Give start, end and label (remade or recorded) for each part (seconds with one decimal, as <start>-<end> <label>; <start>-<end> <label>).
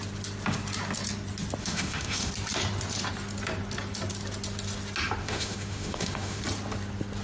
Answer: 0.0-1.6 recorded; 1.6-2.3 remade; 2.3-5.2 recorded; 5.2-6.4 remade; 6.4-7.2 recorded